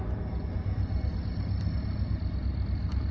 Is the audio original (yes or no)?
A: yes